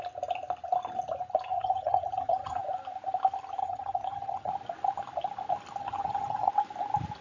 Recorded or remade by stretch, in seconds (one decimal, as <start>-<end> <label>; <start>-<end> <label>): 0.0-1.5 recorded; 1.5-2.6 remade; 2.6-3.6 recorded; 3.6-4.5 remade; 4.5-5.8 recorded; 5.8-6.5 remade; 6.5-7.2 recorded